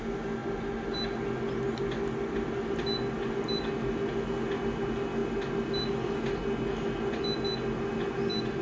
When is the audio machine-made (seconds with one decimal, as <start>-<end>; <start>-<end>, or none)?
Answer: none